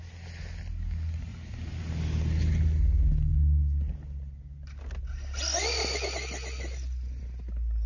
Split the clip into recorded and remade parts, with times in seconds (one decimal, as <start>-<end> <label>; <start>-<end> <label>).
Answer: 0.0-1.3 recorded; 1.3-1.8 remade; 1.8-7.9 recorded